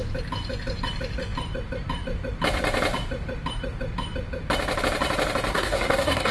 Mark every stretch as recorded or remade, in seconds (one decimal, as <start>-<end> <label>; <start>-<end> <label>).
0.0-5.5 recorded; 5.5-6.3 remade